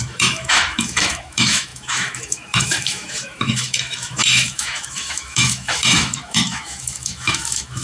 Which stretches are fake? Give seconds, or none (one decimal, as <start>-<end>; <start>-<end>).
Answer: 0.0-7.8

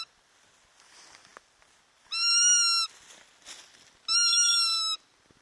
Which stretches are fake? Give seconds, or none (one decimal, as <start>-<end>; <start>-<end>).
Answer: none

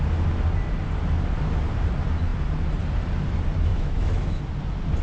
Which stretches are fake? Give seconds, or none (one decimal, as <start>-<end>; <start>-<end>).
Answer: 3.7-4.4